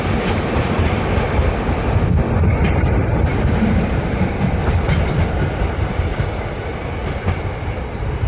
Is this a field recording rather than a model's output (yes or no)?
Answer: yes